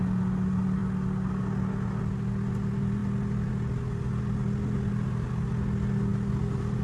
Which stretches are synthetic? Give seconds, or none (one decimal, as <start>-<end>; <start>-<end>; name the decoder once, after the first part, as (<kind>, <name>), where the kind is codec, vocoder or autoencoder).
none